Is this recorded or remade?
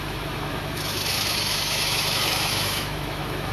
remade